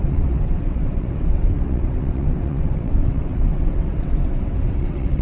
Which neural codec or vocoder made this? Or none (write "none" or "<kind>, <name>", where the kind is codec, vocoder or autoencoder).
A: vocoder, WaveNeXt